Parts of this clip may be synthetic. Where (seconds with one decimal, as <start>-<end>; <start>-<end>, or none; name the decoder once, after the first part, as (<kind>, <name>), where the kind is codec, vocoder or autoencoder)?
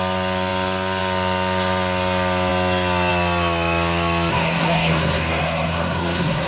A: 4.3-6.5 (codec, SNAC)